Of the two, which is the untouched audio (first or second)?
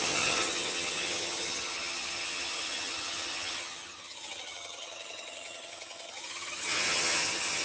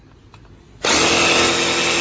second